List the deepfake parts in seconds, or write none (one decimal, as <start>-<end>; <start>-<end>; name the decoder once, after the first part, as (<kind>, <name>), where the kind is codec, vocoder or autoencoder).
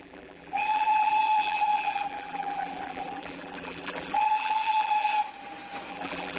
0.0-5.1 (vocoder, BigVGAN v2); 5.9-6.4